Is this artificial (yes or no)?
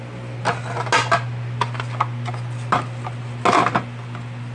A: no